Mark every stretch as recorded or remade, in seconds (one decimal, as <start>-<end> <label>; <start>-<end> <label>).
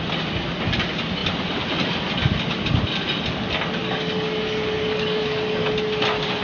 0.0-3.8 recorded; 3.8-5.7 remade; 5.7-6.4 recorded